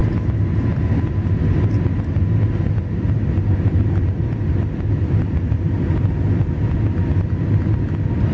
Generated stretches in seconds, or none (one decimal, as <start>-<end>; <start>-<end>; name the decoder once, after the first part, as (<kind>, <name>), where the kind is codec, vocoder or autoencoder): none